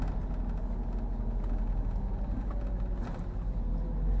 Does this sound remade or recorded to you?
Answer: recorded